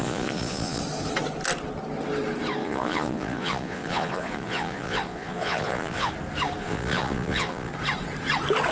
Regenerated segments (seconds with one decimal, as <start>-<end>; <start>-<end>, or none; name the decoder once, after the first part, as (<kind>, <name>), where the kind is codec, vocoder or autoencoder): 0.0-0.8 (vocoder, Vocos); 2.6-6.1; 6.6-7.7